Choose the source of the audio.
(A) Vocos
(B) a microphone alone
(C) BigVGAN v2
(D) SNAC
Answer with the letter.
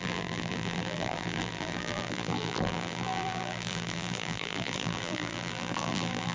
C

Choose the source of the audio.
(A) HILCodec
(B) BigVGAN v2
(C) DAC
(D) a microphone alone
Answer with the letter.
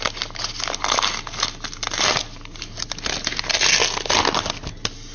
D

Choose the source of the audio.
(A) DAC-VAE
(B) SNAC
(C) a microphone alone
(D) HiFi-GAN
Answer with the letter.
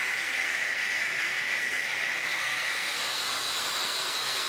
B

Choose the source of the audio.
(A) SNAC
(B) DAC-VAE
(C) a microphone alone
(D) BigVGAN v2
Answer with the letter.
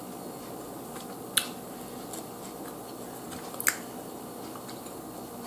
C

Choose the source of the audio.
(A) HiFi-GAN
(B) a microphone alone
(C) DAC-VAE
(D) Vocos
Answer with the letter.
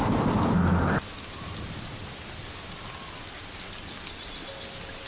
B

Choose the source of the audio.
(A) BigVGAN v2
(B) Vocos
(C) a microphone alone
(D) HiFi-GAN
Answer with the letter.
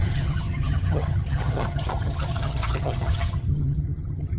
D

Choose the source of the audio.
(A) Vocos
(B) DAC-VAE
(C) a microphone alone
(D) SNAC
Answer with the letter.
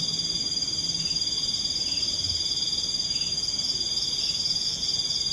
C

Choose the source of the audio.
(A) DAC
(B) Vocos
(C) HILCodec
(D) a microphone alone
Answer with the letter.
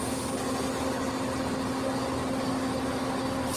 D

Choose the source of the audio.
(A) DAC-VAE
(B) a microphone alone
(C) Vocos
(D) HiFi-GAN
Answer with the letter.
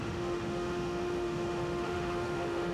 A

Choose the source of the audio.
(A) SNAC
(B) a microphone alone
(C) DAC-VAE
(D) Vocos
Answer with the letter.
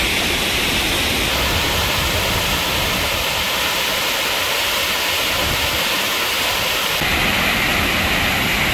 B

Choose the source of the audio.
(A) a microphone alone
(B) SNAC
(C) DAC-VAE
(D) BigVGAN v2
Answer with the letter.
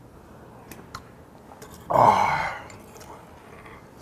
A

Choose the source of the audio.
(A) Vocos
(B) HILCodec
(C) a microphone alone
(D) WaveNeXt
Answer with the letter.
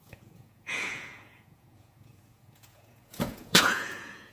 A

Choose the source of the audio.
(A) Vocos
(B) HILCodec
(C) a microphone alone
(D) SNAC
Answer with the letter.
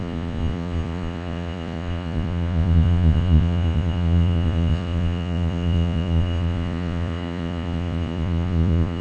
A